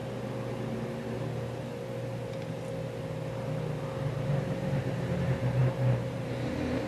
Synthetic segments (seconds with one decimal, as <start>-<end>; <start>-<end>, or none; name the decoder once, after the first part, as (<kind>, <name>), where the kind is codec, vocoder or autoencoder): 4.1-6.9 (vocoder, BigVGAN v2)